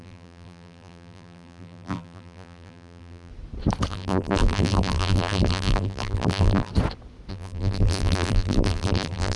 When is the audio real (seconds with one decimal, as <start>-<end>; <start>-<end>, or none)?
3.3-3.9; 6.7-7.3